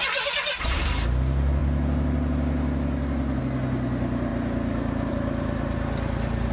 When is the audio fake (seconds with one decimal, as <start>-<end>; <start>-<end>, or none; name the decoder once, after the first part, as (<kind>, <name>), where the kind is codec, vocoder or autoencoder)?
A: none